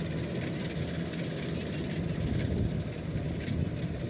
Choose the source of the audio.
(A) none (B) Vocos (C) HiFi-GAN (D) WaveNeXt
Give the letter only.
A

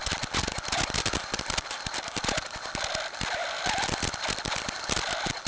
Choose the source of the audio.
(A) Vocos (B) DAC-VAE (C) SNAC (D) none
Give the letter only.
D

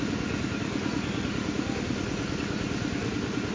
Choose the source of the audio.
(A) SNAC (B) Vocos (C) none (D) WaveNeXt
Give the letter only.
C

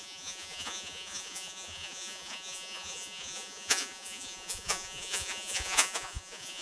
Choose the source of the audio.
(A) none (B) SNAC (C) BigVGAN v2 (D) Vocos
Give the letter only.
D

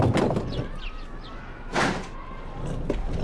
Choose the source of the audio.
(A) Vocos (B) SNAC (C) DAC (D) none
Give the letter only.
D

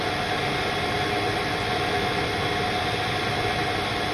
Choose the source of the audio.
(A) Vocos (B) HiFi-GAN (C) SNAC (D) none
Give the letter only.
D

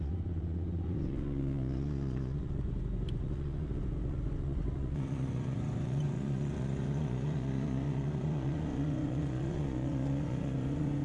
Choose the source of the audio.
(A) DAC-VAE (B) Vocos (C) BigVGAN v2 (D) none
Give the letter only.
B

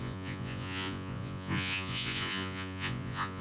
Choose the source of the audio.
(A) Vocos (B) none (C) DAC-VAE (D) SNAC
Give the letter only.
A